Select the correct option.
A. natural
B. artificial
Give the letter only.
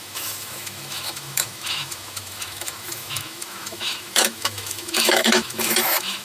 B